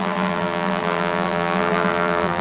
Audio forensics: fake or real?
fake